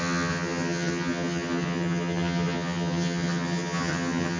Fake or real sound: fake